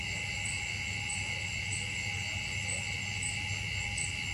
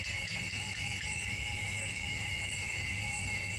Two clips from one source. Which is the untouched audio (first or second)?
first